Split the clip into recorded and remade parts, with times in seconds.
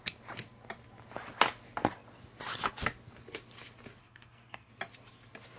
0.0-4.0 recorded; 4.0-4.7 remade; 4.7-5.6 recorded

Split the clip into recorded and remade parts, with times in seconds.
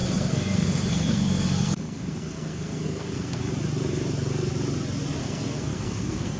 0.0-3.5 remade; 3.5-5.2 recorded; 5.2-6.4 remade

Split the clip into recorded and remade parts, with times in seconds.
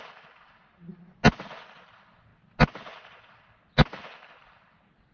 0.0-5.1 recorded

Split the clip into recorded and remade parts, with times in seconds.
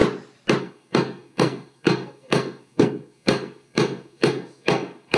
0.0-0.6 recorded; 0.6-5.2 remade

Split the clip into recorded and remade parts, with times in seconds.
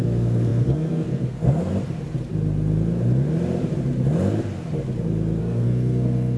0.0-1.7 remade; 1.7-5.4 recorded; 5.4-6.4 remade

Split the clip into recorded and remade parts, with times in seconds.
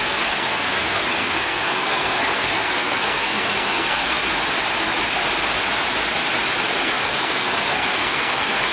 0.0-4.2 remade; 4.2-6.8 recorded; 6.8-8.7 remade